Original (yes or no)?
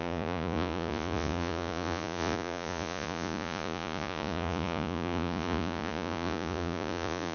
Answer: no